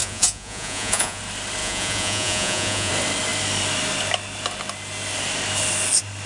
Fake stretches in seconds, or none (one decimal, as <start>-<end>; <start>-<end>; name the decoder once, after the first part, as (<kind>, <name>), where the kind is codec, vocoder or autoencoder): 0.0-1.2 (vocoder, Vocos); 1.6-2.9